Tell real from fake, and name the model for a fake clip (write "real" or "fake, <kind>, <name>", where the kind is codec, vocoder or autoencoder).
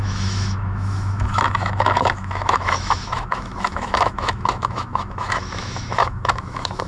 fake, autoencoder, DAC-VAE